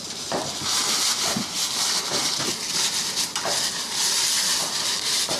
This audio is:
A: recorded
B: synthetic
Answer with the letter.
A